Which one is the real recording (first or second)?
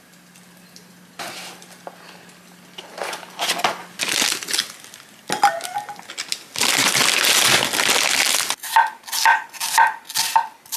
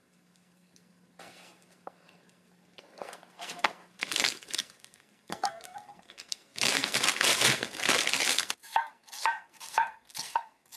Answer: first